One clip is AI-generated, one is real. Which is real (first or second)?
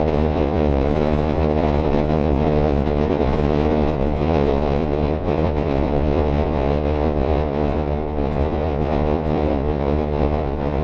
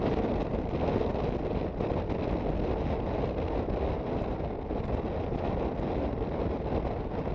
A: second